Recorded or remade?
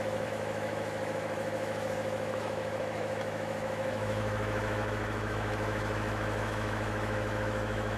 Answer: remade